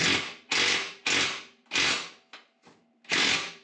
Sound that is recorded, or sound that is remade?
recorded